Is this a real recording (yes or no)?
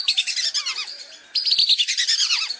yes